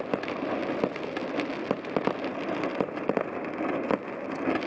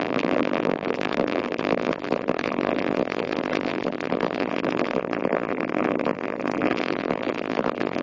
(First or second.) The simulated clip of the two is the second